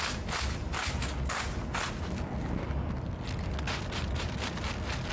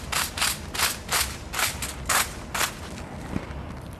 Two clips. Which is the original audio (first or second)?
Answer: first